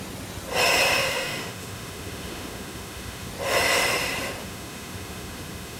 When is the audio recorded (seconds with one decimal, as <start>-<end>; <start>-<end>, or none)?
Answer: 0.0-1.0; 3.3-4.4